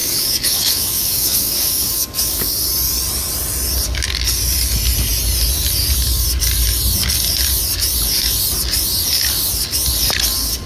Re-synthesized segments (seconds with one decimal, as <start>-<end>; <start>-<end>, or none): 0.0-2.5